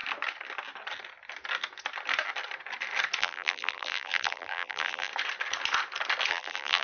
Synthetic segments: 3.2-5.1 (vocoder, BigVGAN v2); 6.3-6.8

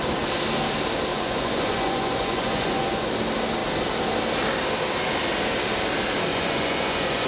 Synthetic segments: 1.1-3.1 (vocoder, Vocos); 6.3-7.3

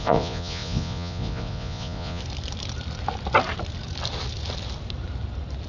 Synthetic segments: 0.0-2.2 (vocoder, Vocos)

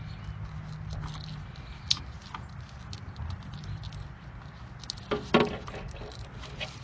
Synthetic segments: none

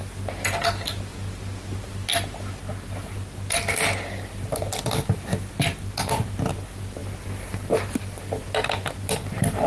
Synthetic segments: none